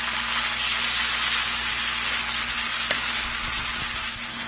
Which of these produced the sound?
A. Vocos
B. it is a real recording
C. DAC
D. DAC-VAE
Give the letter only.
B